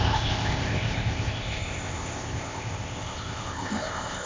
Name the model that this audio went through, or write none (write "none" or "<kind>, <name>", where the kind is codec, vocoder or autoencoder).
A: codec, ZipCodec